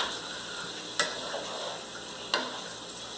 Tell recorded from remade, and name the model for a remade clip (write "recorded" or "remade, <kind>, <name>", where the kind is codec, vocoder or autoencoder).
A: recorded